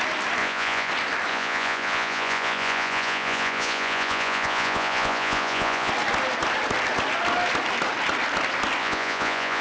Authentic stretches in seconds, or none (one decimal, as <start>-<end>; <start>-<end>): 0.0-0.4; 0.9-1.3; 5.9-8.8